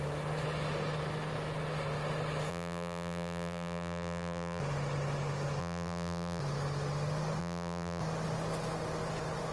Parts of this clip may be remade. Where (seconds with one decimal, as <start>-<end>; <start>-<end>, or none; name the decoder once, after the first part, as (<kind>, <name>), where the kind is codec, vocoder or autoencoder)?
2.5-4.6 (vocoder, BigVGAN v2); 5.6-6.4; 7.4-8.0